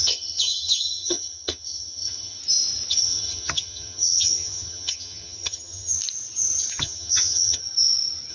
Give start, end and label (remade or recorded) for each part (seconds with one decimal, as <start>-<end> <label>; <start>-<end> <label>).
0.0-2.4 remade; 2.4-2.9 recorded; 2.9-5.9 remade; 5.9-6.7 recorded; 6.7-7.6 remade; 7.6-8.3 recorded